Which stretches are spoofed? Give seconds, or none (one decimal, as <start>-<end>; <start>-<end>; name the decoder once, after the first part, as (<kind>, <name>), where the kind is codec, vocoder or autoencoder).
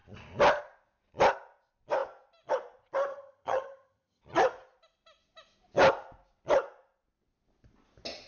3.1-4.2 (vocoder, HiFi-GAN)